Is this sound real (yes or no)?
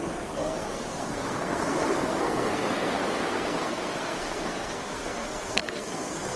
no